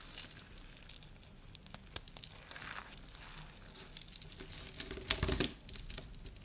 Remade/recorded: recorded